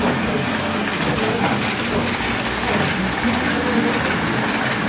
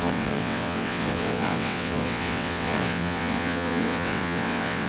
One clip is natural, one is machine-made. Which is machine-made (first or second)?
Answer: second